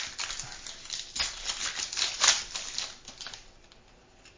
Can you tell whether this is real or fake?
real